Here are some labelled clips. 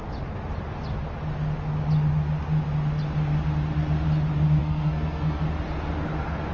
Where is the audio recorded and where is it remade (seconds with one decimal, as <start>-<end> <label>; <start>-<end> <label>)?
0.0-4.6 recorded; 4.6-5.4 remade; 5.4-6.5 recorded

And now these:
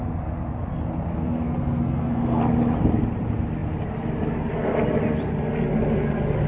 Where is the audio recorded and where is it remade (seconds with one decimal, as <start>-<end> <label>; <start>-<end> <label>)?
0.0-1.1 recorded; 1.1-2.4 remade; 2.4-6.5 recorded

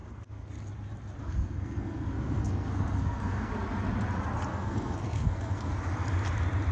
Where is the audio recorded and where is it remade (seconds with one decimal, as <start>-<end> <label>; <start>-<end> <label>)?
0.0-0.5 remade; 0.5-1.2 recorded; 1.2-3.5 remade; 3.5-4.5 recorded; 4.5-5.7 remade; 5.7-6.7 recorded